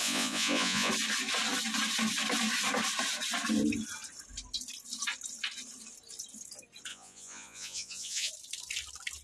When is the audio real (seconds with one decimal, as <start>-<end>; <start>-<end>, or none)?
0.9-6.9; 8.3-9.2